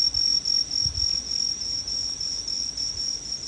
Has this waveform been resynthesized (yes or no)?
no